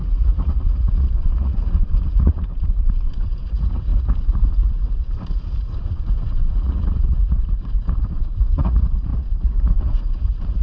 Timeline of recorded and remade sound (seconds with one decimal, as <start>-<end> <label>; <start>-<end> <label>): 0.0-10.6 remade